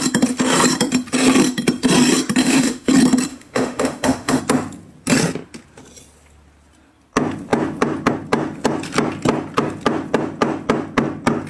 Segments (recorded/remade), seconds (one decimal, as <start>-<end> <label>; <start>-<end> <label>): 0.0-2.4 recorded; 2.4-2.9 remade; 2.9-3.3 recorded; 3.3-4.4 remade; 4.4-11.5 recorded